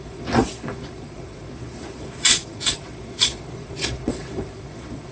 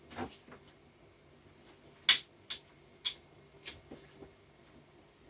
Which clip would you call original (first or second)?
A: second